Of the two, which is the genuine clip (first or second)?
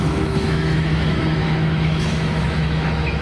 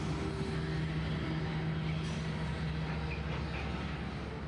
second